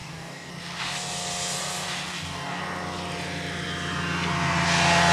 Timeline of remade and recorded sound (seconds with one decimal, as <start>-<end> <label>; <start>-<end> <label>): 0.0-0.5 remade; 0.5-2.1 recorded; 2.1-2.6 remade; 2.6-5.1 recorded